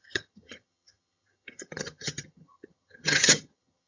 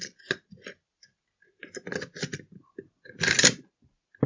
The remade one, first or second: first